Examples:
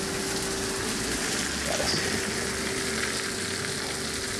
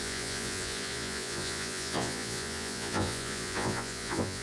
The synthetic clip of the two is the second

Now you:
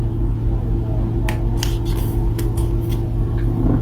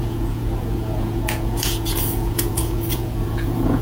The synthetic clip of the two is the second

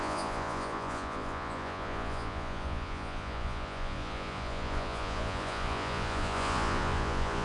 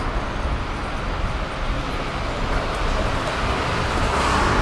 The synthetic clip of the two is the first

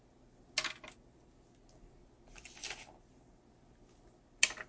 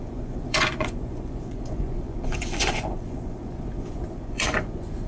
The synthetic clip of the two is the second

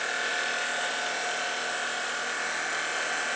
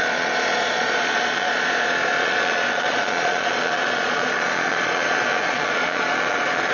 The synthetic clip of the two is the second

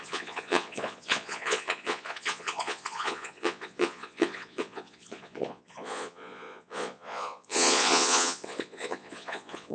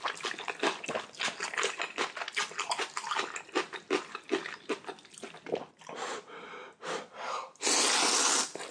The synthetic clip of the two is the first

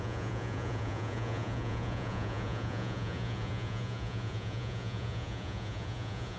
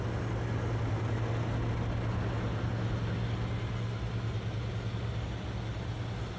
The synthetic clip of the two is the first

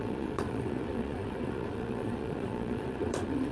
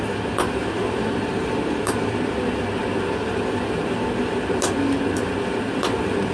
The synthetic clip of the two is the first